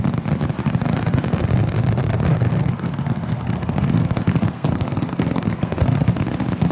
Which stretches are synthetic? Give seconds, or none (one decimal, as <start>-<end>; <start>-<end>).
2.3-6.1